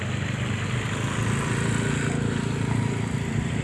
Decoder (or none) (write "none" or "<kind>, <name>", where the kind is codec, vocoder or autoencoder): none